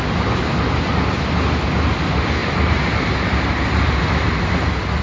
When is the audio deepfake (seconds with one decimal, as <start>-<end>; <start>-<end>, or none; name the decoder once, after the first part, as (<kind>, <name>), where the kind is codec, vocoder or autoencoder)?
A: 2.4-3.8 (vocoder, BigVGAN v2)